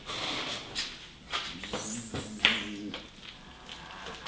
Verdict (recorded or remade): recorded